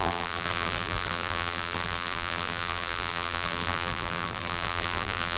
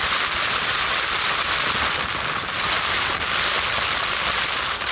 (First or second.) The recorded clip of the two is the second